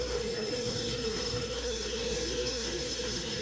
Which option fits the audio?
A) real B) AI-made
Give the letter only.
B